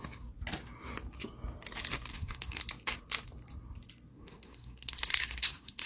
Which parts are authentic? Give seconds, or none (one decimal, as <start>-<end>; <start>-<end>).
0.0-2.1; 2.6-4.1